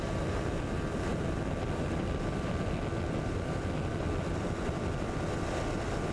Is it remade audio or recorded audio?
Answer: recorded